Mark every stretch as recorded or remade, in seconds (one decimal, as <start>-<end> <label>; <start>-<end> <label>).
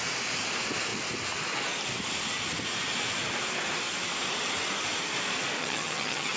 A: 0.0-5.6 recorded; 5.6-6.4 remade